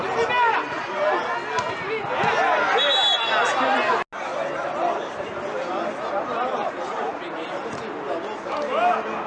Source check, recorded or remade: recorded